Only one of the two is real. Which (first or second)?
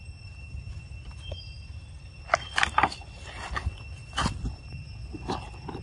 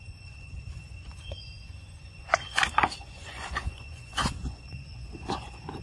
first